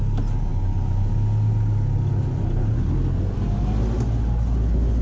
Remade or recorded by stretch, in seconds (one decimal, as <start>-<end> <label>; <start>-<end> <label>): 0.0-5.0 recorded